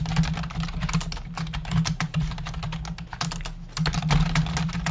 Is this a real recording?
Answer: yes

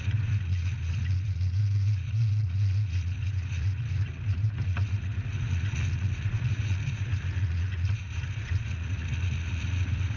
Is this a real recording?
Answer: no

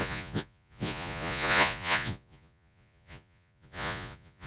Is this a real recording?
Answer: no